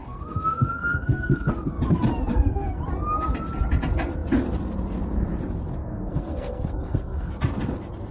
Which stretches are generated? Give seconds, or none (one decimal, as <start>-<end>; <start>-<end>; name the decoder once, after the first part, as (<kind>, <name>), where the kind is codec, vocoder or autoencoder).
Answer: 0.0-1.5 (codec, SNAC); 2.3-2.8; 5.8-7.3